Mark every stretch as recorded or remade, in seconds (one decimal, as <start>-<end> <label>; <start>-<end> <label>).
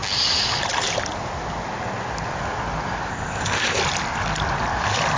0.0-3.1 recorded; 3.1-3.8 remade; 3.8-5.2 recorded